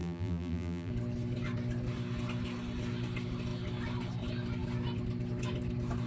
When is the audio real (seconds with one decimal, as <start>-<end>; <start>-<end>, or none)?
0.9-6.1